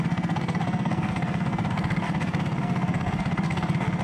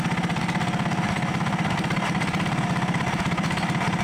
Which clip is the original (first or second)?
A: second